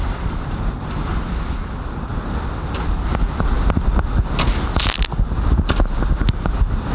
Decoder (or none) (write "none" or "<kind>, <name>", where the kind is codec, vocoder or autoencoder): none